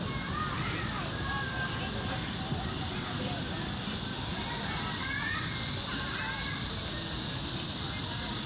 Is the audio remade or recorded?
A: recorded